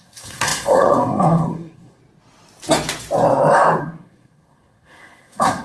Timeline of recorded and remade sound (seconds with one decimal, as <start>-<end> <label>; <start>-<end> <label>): 0.0-2.0 remade; 2.0-3.8 recorded; 3.8-5.6 remade